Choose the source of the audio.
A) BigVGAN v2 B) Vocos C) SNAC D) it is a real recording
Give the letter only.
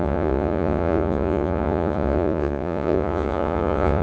B